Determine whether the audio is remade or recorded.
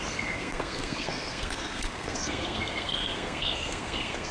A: remade